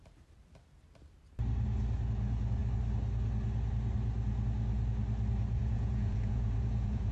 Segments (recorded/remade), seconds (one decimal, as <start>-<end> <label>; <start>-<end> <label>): 0.0-5.6 recorded; 5.6-7.1 remade